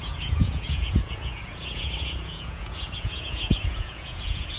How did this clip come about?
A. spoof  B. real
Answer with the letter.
A